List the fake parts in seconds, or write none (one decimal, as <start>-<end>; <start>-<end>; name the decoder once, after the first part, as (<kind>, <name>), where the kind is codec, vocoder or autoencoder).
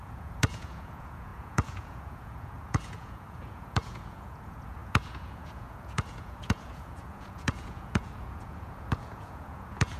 0.0-10.0 (vocoder, Vocos)